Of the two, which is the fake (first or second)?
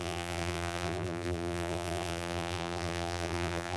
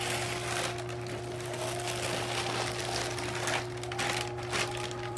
first